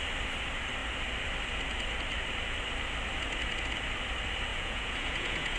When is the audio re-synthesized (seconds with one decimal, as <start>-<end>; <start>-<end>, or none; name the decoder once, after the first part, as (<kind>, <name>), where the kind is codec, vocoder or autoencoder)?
4.5-5.6 (vocoder, Vocos)